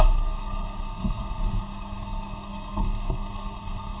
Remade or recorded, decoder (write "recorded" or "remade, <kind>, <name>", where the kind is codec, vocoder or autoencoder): remade, codec, SNAC